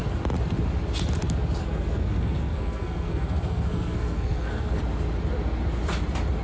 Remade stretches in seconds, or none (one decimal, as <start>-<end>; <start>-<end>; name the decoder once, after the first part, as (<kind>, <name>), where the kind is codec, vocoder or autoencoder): 1.6-4.8 (codec, SNAC)